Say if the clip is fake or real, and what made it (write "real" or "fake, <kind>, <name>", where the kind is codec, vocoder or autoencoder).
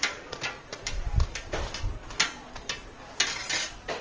real